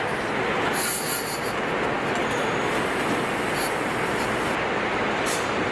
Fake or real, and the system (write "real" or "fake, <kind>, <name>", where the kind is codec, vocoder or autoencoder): real